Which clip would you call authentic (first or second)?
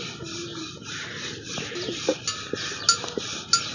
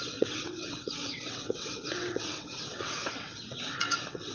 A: first